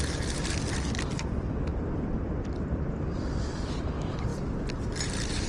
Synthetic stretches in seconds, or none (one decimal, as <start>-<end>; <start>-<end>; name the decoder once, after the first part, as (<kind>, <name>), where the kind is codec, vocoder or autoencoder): 0.0-4.3 (vocoder, BigVGAN v2); 5.0-5.5